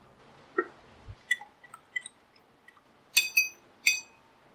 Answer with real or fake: real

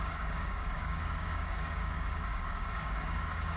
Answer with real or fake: fake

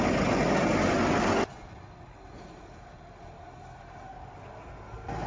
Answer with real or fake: real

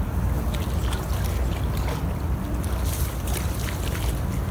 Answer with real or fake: real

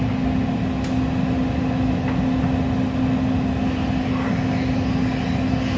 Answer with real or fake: real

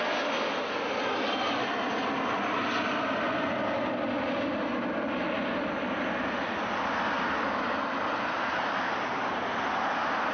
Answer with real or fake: real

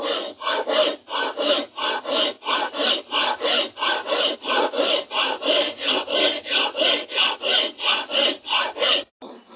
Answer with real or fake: real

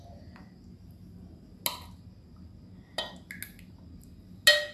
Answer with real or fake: real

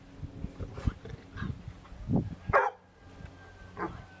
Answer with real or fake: real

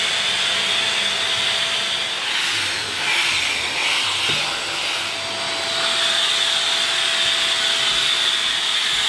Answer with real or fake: real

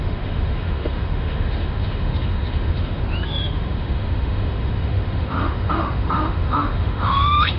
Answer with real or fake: fake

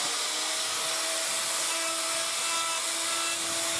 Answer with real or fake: real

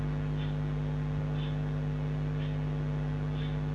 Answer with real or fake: real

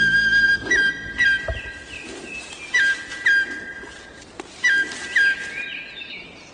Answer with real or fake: real